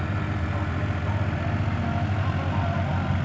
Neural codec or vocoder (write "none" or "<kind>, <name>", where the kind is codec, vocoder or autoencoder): none